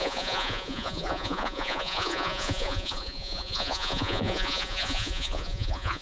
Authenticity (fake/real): fake